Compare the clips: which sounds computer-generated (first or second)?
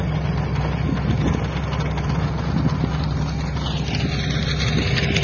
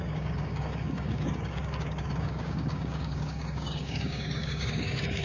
second